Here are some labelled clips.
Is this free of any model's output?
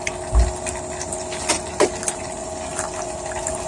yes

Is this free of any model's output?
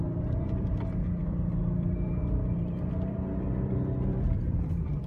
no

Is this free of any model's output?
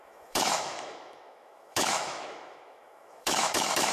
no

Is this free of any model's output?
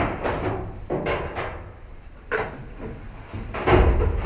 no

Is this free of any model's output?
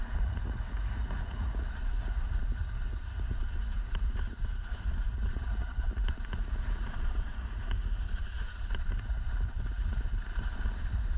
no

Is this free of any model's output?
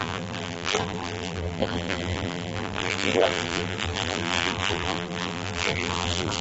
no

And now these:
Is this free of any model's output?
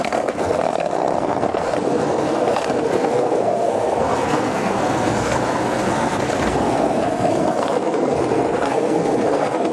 no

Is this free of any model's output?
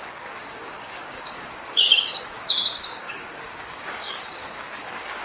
no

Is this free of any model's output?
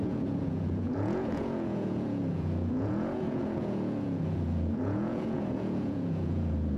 no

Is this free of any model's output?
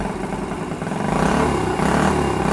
yes